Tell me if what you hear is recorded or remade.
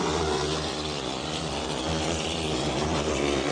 remade